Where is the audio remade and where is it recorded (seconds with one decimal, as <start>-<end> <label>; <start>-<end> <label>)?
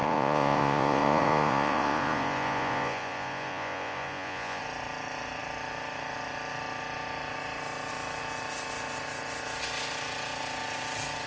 0.0-4.6 remade; 4.6-11.3 recorded